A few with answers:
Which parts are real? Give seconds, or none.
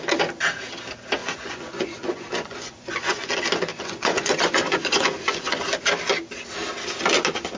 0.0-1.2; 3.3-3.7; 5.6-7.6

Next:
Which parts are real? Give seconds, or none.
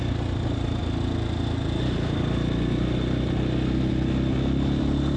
0.0-5.2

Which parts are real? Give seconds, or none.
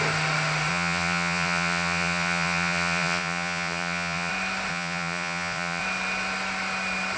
0.0-0.7; 4.3-4.7; 5.8-7.2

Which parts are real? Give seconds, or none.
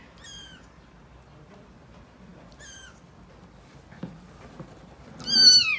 0.0-5.8